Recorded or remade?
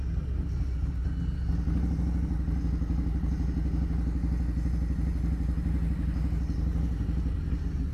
recorded